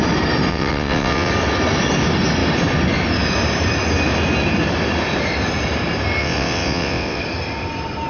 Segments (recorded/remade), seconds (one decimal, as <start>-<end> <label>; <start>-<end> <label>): 0.0-0.5 recorded; 0.5-1.3 remade; 1.3-6.2 recorded; 6.2-7.2 remade; 7.2-8.1 recorded